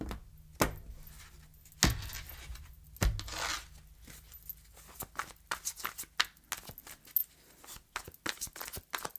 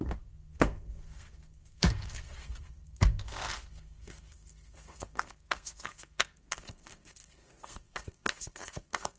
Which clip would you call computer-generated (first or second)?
second